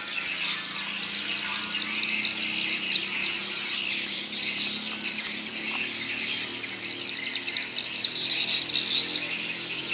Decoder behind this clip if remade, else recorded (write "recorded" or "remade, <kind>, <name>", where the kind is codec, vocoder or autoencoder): recorded